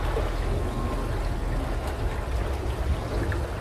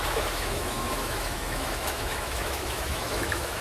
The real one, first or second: first